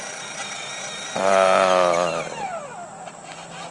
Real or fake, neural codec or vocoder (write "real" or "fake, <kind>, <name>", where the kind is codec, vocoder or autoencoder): real